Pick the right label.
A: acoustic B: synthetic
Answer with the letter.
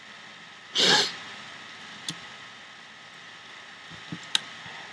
A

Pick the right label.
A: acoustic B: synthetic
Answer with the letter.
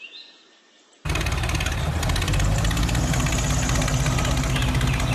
A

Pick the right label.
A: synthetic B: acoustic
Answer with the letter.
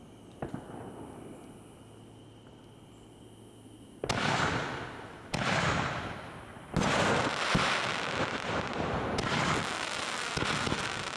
B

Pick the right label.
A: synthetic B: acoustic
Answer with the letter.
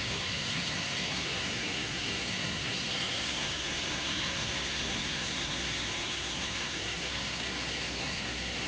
A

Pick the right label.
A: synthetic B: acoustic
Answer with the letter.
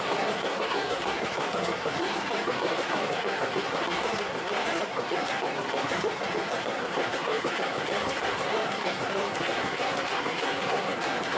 A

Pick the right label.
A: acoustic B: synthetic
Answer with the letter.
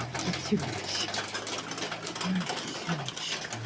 A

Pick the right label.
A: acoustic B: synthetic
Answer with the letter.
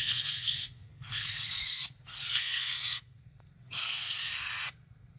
B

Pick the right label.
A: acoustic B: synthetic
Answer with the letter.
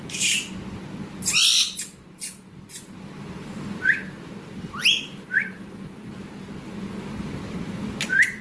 A